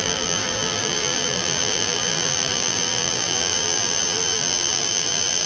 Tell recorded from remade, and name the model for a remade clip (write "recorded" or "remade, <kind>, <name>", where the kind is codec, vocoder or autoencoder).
remade, vocoder, BigVGAN v2